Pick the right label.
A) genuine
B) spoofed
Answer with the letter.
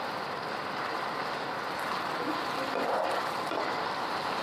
A